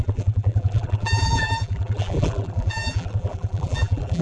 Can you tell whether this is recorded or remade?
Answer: remade